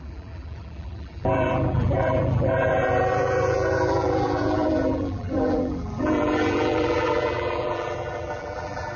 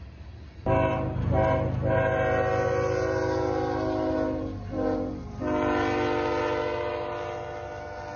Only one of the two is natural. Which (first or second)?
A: second